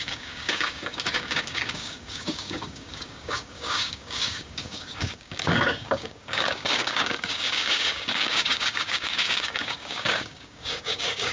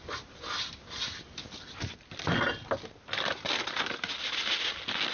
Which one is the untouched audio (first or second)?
second